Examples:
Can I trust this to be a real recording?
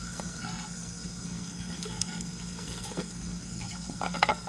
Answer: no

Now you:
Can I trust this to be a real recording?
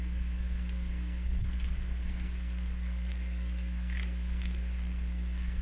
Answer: no